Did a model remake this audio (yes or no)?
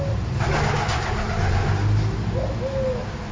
no